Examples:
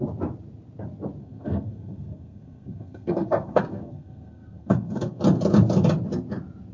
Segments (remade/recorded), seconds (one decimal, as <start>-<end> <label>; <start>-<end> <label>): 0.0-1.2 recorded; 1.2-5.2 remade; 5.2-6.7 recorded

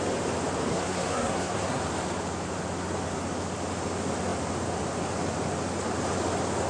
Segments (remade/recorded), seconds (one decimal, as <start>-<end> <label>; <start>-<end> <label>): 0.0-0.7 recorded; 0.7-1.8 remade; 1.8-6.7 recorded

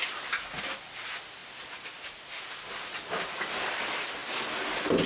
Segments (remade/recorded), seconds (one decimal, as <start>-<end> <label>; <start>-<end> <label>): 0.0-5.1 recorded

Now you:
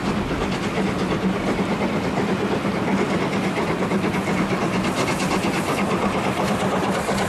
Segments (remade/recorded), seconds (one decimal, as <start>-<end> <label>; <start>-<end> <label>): 0.0-7.3 recorded

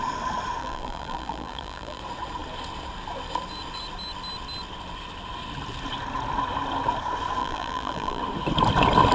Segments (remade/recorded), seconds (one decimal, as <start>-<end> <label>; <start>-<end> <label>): 0.0-0.6 recorded; 0.6-2.0 remade; 2.0-7.4 recorded; 7.4-8.2 remade; 8.2-9.1 recorded

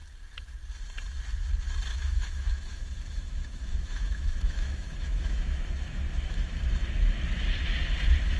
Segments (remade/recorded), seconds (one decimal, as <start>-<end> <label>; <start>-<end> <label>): 0.0-1.9 recorded; 1.9-6.6 remade; 6.6-8.4 recorded

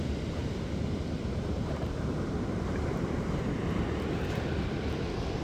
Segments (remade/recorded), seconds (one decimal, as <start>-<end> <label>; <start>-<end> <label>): 0.0-0.4 recorded; 0.4-3.6 remade; 3.6-5.4 recorded

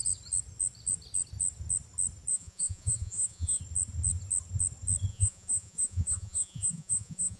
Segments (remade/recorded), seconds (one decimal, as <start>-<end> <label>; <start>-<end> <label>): 0.0-2.3 recorded; 2.3-3.6 remade; 3.6-5.1 recorded; 5.1-7.4 remade